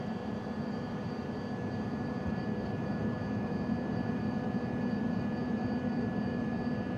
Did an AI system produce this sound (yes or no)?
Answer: yes